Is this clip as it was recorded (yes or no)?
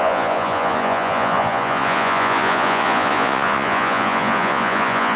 no